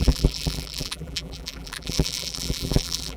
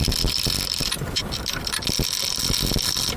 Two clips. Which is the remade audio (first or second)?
first